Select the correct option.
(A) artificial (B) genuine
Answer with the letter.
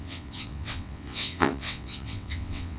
A